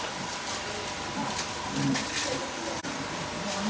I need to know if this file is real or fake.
real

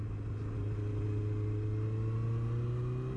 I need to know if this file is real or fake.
real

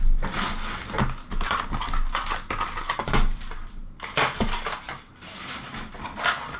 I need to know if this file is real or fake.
real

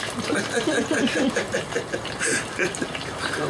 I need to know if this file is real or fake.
fake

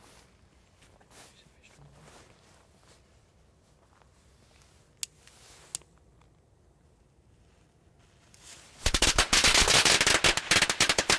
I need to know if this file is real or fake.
real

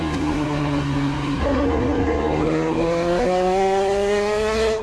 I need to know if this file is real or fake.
fake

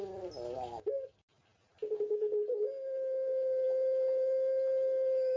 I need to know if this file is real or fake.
real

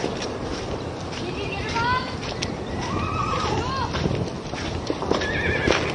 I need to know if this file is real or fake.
real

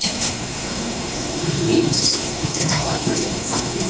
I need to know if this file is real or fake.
fake